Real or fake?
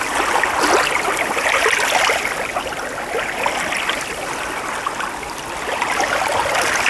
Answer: real